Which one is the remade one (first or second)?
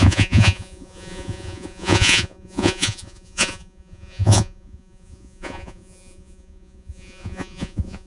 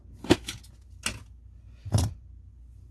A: first